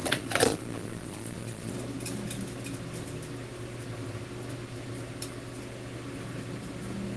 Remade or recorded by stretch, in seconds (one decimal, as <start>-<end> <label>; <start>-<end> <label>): 0.0-1.7 remade; 1.7-7.2 recorded

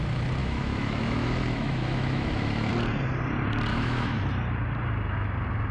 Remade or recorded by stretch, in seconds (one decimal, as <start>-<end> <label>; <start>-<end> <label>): 0.0-0.4 recorded; 0.4-2.7 remade; 2.7-3.7 recorded; 3.7-4.3 remade; 4.3-5.7 recorded

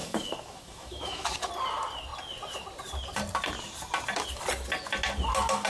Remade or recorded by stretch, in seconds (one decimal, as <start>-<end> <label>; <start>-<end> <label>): 0.0-1.5 remade; 1.5-5.7 recorded

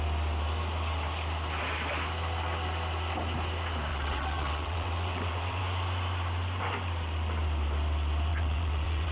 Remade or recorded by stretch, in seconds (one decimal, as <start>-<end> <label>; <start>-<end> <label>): 0.0-3.9 recorded; 3.9-5.6 remade; 5.6-8.3 recorded; 8.3-9.1 remade